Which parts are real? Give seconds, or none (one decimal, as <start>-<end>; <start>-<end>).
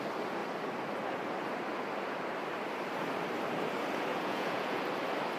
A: 0.0-4.1; 4.8-5.4